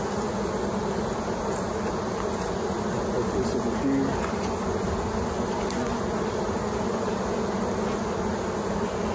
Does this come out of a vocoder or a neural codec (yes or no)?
no